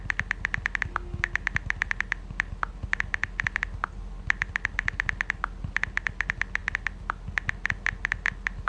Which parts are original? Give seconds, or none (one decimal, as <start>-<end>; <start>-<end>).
0.0-8.7